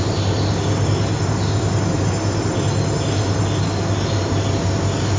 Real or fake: real